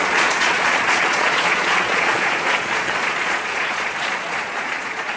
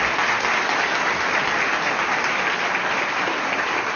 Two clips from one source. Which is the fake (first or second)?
first